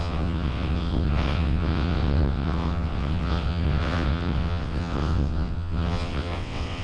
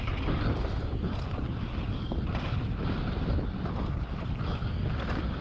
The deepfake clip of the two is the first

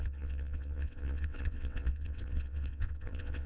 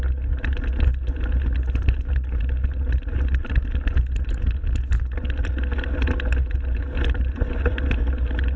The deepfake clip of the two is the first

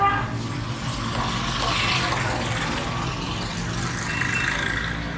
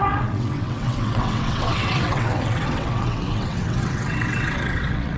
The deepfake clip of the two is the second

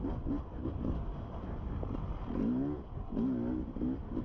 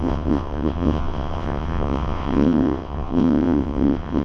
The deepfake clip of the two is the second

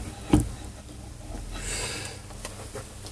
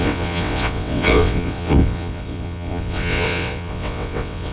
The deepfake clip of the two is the second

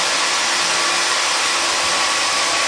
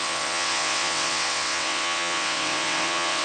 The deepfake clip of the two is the second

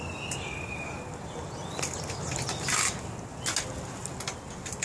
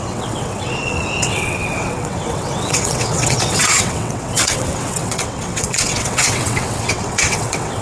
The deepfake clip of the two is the second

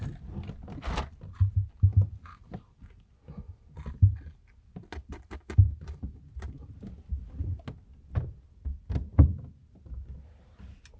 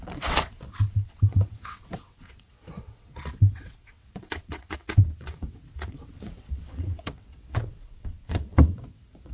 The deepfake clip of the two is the second